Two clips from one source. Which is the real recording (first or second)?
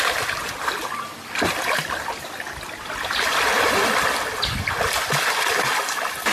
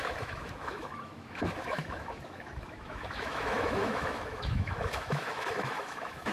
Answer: first